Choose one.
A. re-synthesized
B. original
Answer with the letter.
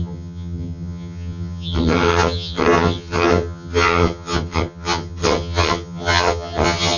A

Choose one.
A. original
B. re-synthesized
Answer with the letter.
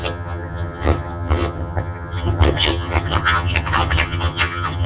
B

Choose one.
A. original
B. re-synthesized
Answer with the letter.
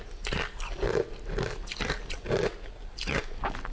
A